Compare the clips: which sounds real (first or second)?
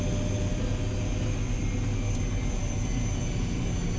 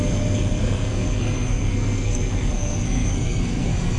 first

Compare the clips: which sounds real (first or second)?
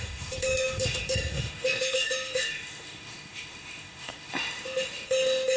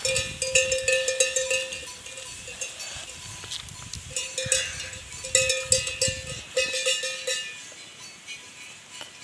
second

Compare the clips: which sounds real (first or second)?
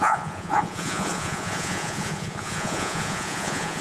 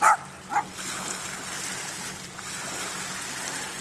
second